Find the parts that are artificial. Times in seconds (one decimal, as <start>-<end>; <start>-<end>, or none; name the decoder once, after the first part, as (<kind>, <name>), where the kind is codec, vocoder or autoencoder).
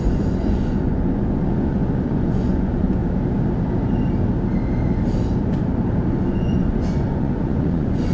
0.0-3.0 (vocoder, Vocos); 6.1-8.1